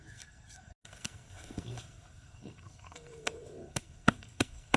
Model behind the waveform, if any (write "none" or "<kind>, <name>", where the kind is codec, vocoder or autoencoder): codec, SNAC